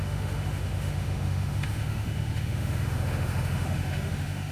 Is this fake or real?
fake